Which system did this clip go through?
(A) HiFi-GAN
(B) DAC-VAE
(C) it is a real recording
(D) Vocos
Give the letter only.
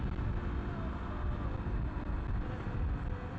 C